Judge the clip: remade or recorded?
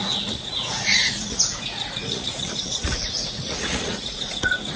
remade